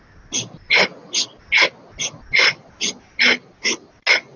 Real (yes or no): yes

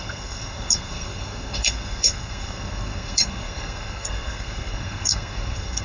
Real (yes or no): no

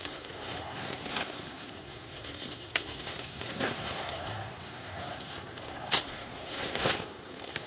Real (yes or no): no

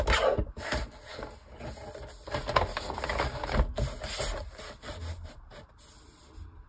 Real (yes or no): yes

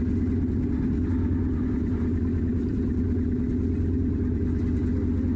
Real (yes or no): yes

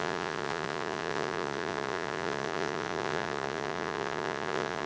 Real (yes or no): no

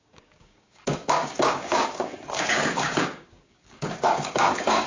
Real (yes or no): no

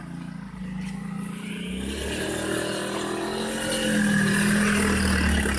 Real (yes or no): yes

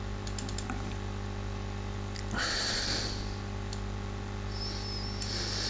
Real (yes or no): yes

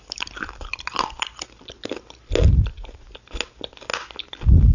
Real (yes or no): yes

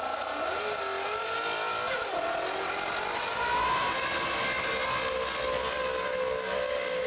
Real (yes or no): yes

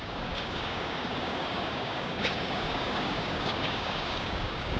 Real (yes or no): no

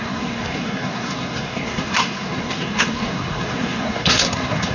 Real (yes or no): no